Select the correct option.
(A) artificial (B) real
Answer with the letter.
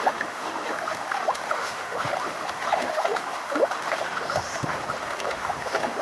A